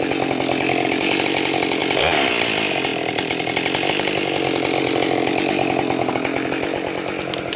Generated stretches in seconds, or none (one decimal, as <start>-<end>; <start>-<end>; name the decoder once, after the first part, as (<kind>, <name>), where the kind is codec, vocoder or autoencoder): none